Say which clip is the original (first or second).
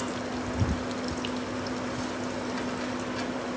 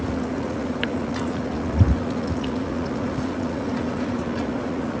first